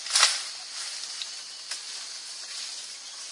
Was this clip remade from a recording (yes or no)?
no